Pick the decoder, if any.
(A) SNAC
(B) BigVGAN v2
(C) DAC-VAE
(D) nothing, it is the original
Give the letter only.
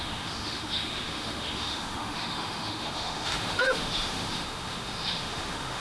C